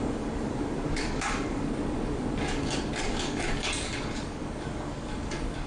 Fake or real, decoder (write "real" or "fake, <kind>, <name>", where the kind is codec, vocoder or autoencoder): fake, codec, DAC